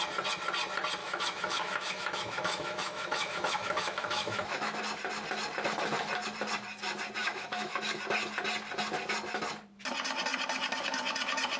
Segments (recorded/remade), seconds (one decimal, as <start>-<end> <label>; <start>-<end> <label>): 0.0-1.0 recorded; 1.0-4.8 remade; 4.8-7.2 recorded; 7.2-8.0 remade; 8.0-11.6 recorded